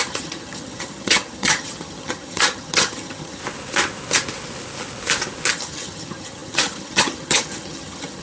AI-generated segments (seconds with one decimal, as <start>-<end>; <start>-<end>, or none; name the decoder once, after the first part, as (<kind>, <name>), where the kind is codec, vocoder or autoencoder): 0.0-3.4 (vocoder, HiFi-GAN); 5.5-8.2